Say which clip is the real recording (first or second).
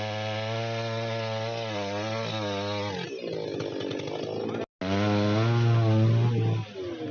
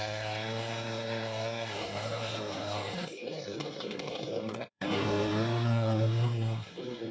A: first